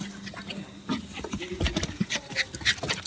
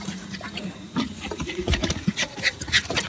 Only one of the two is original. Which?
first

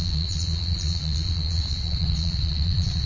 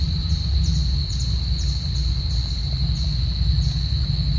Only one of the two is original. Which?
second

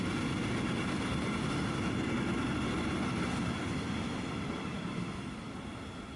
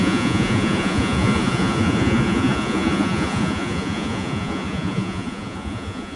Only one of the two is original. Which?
first